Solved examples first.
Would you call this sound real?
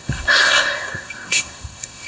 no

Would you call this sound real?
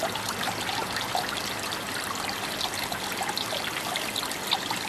yes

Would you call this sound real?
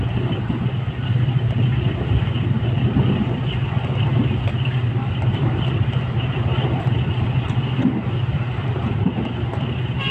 no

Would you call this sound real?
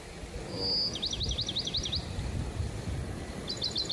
yes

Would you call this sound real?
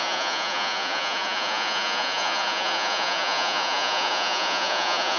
no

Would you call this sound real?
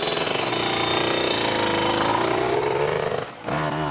yes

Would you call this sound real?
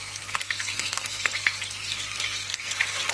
no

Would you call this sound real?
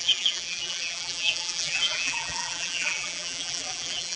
no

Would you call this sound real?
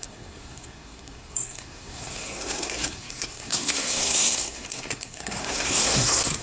no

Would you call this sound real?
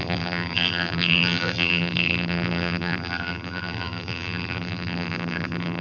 no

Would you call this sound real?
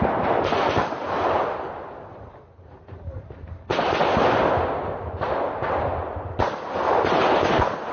yes